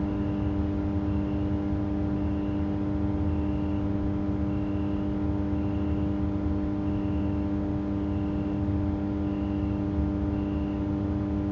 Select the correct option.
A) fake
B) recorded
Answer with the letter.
B